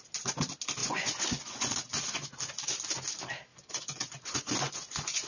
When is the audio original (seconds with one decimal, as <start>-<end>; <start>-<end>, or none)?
0.0-0.8; 2.3-3.5